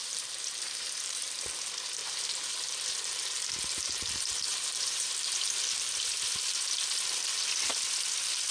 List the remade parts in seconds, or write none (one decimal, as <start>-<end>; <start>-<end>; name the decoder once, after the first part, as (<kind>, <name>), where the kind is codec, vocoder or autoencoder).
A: 0.0-1.4 (vocoder, BigVGAN v2); 2.0-5.5